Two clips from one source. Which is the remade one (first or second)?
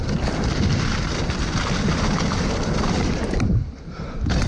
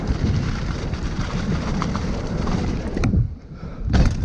second